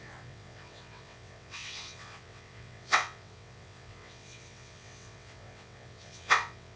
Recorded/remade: remade